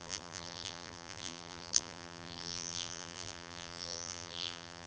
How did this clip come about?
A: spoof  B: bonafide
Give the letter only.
A